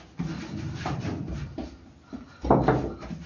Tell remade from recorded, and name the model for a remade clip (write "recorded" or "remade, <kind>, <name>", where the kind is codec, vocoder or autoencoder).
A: recorded